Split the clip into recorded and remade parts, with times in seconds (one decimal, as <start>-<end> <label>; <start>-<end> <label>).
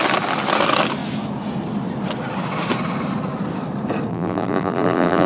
0.0-4.1 recorded; 4.1-5.3 remade